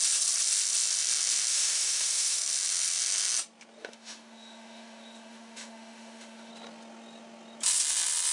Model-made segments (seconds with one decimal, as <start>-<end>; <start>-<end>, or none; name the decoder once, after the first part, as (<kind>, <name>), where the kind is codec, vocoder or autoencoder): 1.5-2.4 (autoencoder, DAC-VAE); 3.8-6.5